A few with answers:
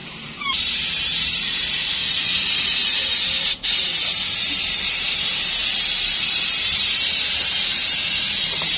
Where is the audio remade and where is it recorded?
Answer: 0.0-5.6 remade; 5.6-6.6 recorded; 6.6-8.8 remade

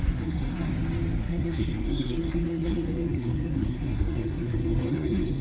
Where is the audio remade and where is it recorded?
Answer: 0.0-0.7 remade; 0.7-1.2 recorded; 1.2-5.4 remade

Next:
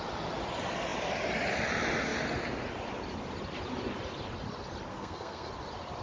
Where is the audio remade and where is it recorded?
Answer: 0.0-4.9 recorded; 4.9-5.5 remade; 5.5-6.0 recorded

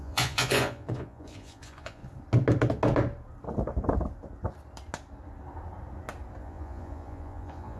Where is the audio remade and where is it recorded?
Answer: 0.0-2.0 remade; 2.0-6.4 recorded; 6.4-7.8 remade

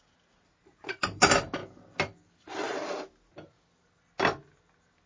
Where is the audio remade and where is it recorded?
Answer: 0.0-0.6 recorded; 0.6-1.2 remade; 1.2-5.1 recorded